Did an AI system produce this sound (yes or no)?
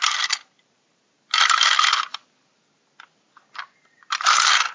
no